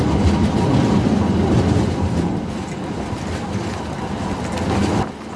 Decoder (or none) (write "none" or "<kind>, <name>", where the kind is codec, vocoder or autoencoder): none